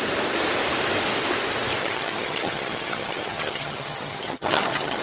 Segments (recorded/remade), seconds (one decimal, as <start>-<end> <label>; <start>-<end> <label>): 0.0-1.8 recorded; 1.8-5.0 remade